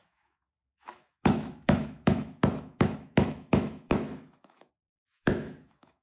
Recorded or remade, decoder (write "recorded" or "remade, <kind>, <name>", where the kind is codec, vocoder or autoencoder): remade, autoencoder, DAC-VAE